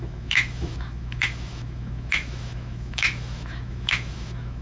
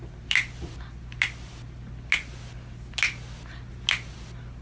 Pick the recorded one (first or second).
second